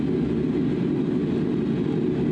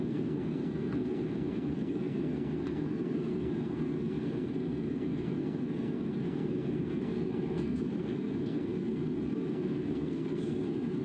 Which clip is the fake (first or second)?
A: second